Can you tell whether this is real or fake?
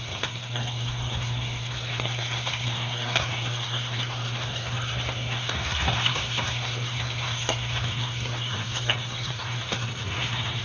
fake